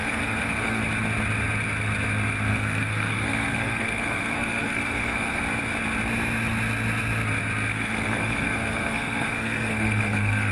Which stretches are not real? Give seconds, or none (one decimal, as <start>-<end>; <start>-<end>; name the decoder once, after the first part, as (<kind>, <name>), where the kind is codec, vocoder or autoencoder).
0.0-0.8 (codec, SNAC); 2.5-5.4; 7.7-10.5